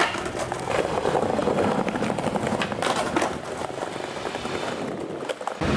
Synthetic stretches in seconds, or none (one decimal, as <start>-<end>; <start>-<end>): none